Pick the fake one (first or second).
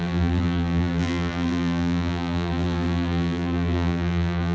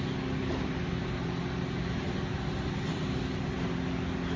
first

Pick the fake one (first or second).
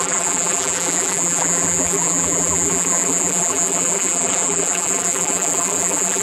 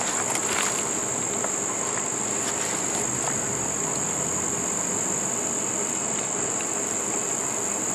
first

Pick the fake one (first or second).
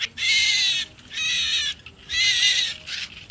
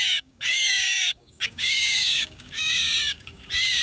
second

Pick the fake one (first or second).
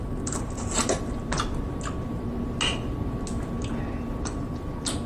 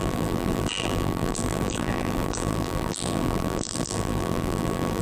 second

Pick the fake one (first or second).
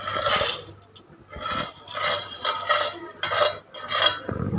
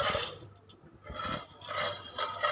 second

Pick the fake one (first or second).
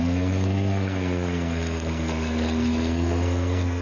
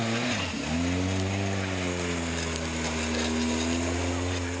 first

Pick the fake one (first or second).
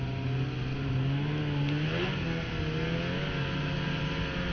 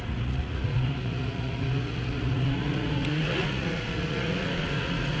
second